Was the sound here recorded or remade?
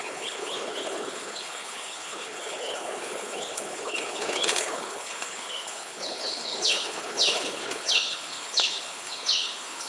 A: remade